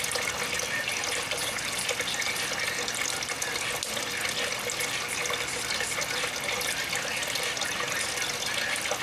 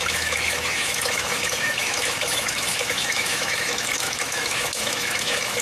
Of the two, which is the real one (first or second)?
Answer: first